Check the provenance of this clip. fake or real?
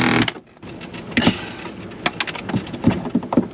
real